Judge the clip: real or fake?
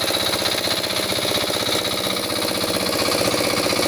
real